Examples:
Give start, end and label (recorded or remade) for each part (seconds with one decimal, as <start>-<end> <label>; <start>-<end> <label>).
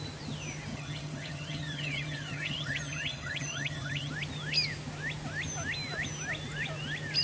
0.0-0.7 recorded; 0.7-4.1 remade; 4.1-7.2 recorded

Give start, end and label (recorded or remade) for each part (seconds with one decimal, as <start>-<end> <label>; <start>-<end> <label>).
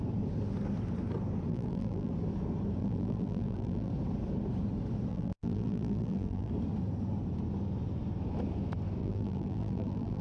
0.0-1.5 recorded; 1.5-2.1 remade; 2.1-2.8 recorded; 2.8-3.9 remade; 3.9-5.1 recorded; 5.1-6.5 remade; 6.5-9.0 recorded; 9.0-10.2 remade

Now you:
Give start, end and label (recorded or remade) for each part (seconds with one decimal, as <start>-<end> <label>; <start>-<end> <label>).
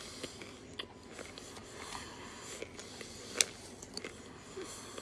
0.0-5.0 recorded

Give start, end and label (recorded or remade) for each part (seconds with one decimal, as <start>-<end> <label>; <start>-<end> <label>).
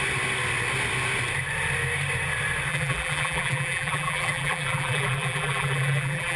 0.0-2.7 recorded; 2.7-6.4 remade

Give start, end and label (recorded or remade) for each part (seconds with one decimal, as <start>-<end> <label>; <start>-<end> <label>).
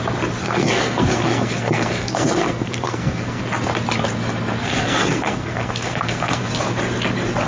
0.0-0.4 recorded; 0.4-3.4 remade; 3.4-4.6 recorded; 4.6-6.5 remade; 6.5-7.5 recorded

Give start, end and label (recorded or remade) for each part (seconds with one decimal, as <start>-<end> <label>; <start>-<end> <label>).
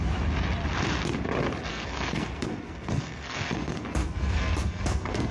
0.0-1.7 recorded; 1.7-5.3 remade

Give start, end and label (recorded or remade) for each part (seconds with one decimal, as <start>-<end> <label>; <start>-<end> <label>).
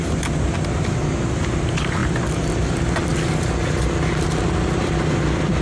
0.0-5.6 recorded